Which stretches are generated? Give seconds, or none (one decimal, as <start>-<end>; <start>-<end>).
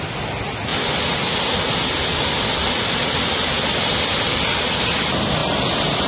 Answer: none